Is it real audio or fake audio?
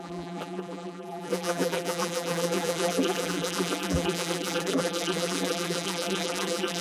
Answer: fake